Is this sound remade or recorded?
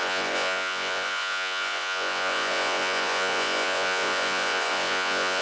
remade